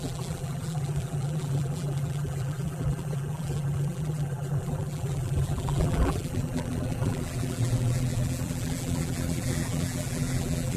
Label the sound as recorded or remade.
remade